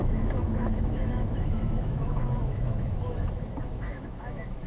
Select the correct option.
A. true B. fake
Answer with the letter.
B